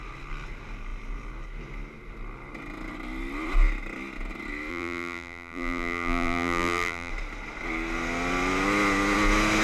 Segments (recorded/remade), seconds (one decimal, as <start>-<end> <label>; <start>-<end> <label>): 0.0-4.7 recorded; 4.7-7.1 remade; 7.1-9.6 recorded